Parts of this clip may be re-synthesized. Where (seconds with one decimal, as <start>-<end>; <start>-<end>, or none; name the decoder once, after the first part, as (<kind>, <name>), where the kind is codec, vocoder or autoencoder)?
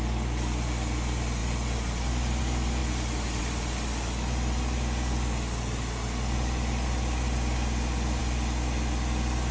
none